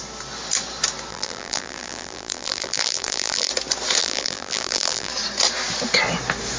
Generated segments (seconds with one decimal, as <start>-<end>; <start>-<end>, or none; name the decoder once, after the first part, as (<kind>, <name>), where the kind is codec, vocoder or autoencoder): 1.1-3.5 (vocoder, BigVGAN v2); 4.0-5.1